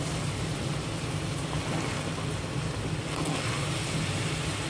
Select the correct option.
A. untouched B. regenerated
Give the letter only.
A